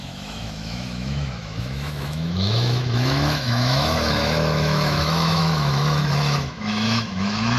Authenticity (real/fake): fake